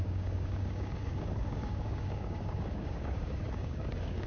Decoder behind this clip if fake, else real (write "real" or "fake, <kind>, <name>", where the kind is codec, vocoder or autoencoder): fake, codec, DAC